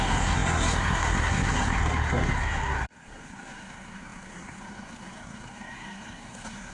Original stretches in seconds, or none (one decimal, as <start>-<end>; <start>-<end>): none